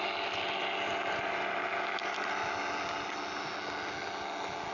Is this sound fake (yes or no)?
no